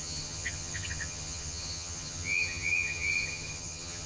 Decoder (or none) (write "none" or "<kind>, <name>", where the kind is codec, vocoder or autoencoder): vocoder, HiFi-GAN